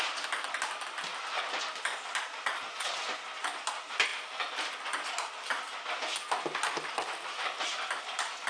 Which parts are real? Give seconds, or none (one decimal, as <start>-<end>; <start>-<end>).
0.0-8.5